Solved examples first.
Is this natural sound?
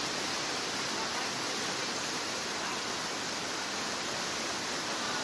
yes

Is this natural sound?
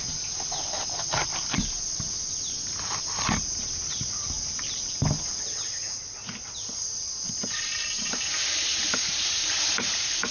yes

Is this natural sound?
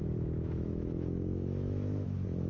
no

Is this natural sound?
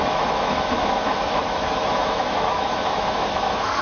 no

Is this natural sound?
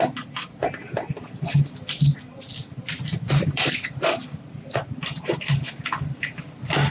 yes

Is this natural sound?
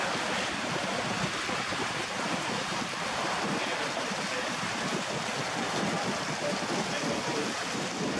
yes